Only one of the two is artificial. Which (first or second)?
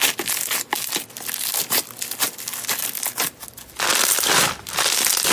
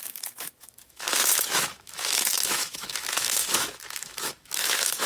second